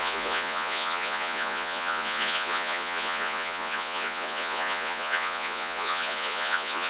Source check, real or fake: fake